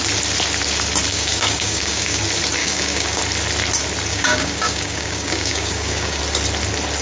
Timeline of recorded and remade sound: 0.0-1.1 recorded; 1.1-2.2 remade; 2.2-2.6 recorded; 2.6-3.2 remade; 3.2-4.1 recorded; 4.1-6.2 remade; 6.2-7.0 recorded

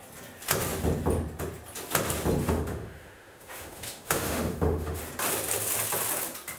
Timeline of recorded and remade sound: 0.0-2.4 recorded; 2.4-5.0 remade; 5.0-6.6 recorded

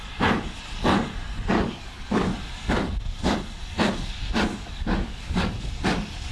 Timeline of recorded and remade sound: 0.0-1.5 recorded; 1.5-2.2 remade; 2.2-4.5 recorded; 4.5-5.5 remade; 5.5-6.3 recorded